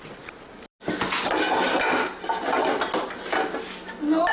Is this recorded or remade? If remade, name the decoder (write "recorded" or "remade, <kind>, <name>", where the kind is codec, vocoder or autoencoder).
recorded